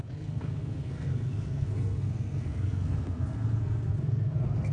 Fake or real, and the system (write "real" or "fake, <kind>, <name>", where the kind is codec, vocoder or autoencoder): fake, codec, SNAC